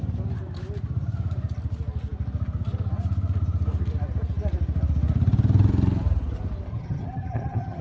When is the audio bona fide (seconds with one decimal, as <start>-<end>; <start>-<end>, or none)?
0.0-6.7